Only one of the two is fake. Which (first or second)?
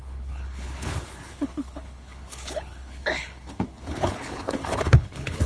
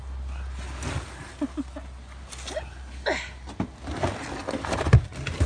first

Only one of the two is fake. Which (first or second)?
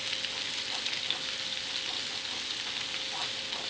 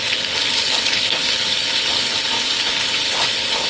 second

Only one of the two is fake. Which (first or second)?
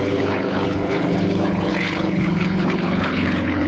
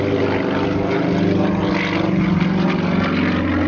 first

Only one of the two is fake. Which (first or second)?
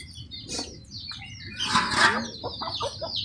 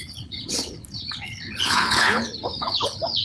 second